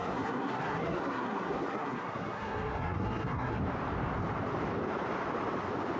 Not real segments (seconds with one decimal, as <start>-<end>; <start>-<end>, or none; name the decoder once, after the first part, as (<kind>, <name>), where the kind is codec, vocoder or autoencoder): 0.0-3.6 (codec, SNAC)